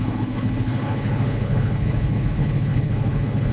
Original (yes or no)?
no